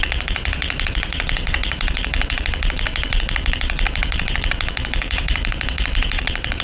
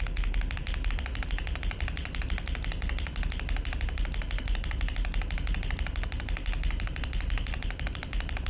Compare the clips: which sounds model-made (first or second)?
first